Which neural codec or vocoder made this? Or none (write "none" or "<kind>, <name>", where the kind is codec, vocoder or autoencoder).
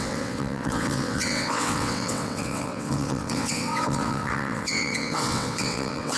vocoder, WaveNeXt